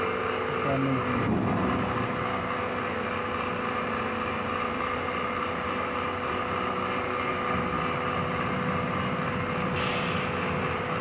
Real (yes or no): yes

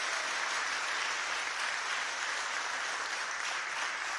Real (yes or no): no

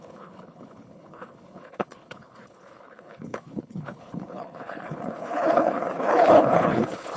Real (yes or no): no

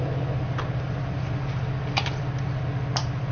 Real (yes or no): yes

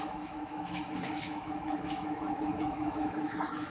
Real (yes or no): no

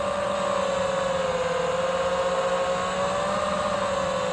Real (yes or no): yes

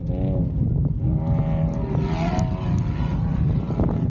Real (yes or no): yes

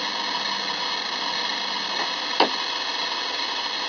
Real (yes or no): yes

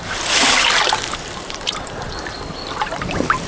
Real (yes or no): no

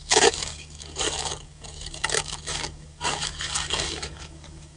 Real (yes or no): no